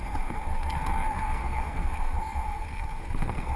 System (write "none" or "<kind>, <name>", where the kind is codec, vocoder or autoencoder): codec, SNAC